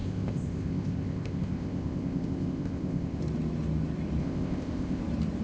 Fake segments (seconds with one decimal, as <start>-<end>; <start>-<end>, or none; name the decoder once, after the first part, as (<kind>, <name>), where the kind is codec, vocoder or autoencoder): 0.0-3.2 (codec, ZipCodec); 4.2-5.0